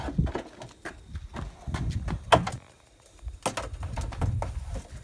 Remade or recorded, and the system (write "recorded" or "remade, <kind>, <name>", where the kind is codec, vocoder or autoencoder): recorded